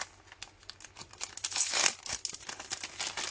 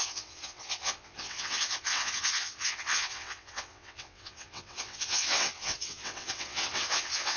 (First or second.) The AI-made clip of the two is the second